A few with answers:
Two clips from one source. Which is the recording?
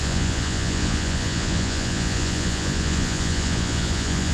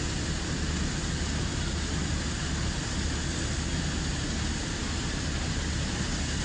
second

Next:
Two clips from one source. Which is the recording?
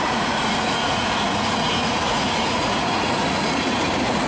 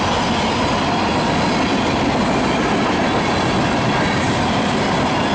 second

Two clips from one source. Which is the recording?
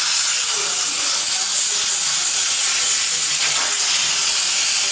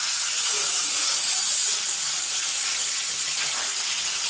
first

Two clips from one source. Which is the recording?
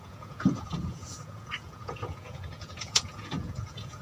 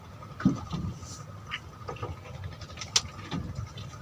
second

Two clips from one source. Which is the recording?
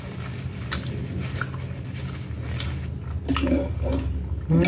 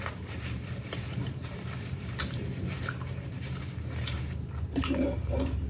first